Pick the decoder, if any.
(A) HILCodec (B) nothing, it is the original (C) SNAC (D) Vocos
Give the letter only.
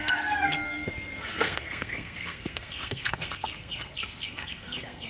C